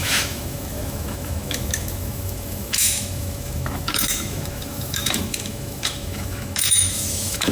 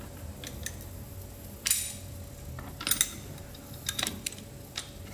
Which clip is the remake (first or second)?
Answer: first